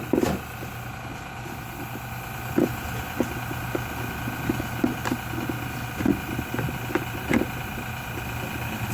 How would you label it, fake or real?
real